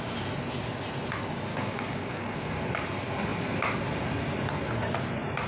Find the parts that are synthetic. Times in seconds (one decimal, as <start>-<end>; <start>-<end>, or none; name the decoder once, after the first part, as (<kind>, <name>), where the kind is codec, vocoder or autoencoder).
1.5-2.5 (codec, DAC)